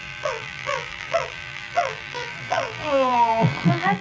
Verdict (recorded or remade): remade